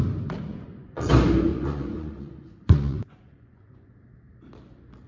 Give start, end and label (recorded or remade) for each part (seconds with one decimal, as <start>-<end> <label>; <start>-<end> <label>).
0.0-0.5 recorded; 0.5-1.1 remade; 1.1-1.5 recorded; 1.5-3.9 remade; 3.9-5.1 recorded